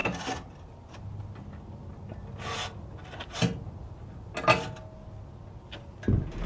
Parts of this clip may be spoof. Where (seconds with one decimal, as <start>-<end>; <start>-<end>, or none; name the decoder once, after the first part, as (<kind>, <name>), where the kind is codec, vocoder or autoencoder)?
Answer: none